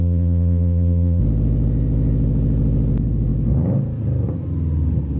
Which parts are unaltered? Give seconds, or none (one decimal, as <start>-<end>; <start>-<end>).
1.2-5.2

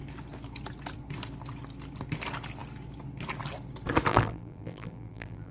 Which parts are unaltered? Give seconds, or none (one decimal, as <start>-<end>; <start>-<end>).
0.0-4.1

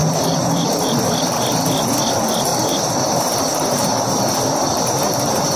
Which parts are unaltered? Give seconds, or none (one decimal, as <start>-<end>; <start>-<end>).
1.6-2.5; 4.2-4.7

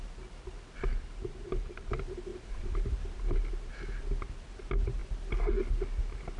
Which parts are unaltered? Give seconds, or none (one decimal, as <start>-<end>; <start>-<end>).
0.0-0.9; 1.9-2.3; 3.4-6.4